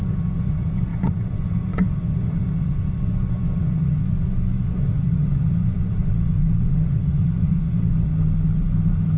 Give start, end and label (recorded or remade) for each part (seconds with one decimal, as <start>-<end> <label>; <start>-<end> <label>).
0.0-8.1 remade; 8.1-9.2 recorded